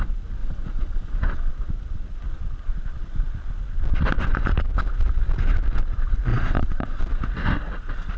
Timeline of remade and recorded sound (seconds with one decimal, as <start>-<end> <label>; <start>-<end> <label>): 0.0-0.4 recorded; 0.4-1.5 remade; 1.5-6.3 recorded; 6.3-7.0 remade; 7.0-8.2 recorded